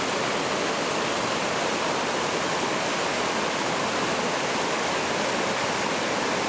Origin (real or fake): real